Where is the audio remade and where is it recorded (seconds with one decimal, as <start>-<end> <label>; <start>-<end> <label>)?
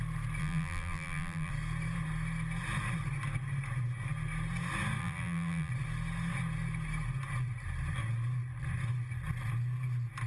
0.0-0.4 recorded; 0.4-1.5 remade; 1.5-5.0 recorded; 5.0-5.7 remade; 5.7-10.3 recorded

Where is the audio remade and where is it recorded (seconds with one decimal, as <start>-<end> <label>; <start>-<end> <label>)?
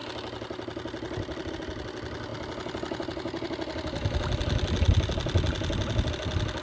0.0-6.6 recorded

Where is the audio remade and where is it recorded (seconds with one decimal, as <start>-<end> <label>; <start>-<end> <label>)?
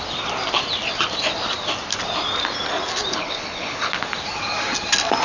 0.0-3.1 recorded; 3.1-3.9 remade; 3.9-5.2 recorded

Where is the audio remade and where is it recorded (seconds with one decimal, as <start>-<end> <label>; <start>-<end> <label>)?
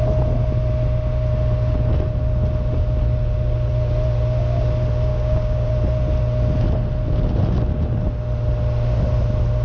0.0-5.1 recorded; 5.1-5.7 remade; 5.7-9.6 recorded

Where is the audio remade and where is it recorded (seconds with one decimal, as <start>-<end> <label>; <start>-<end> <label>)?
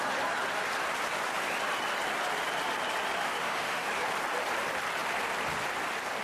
0.0-3.2 recorded; 3.2-3.9 remade; 3.9-6.2 recorded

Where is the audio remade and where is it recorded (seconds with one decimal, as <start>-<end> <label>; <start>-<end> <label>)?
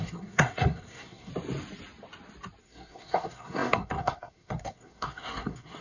0.0-1.3 remade; 1.3-2.6 recorded; 2.6-5.8 remade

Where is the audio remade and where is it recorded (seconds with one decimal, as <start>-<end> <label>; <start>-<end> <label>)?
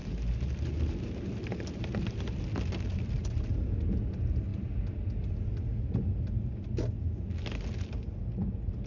0.0-2.4 remade; 2.4-2.9 recorded; 2.9-3.8 remade; 3.8-8.9 recorded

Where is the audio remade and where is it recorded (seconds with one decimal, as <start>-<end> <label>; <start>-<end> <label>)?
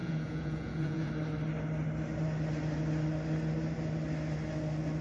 0.0-1.1 remade; 1.1-5.0 recorded